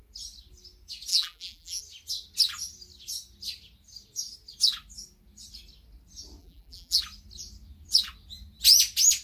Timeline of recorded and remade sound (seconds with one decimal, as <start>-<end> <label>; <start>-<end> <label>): 0.0-1.1 recorded; 1.1-1.8 remade; 1.8-6.4 recorded; 6.4-7.0 remade; 7.0-9.2 recorded